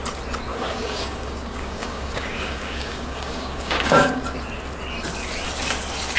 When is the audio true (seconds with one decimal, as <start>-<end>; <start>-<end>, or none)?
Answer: 0.0-0.5; 4.2-6.2